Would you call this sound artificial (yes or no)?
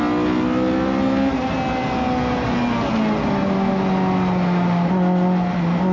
no